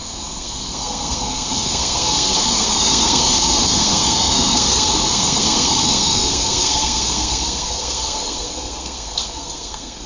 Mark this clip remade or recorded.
remade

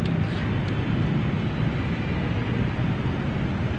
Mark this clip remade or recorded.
recorded